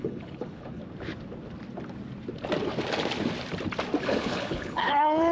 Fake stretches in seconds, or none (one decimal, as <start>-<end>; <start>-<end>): 0.0-0.8; 4.0-5.3